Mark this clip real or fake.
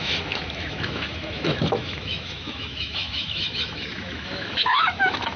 fake